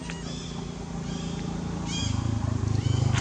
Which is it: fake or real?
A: real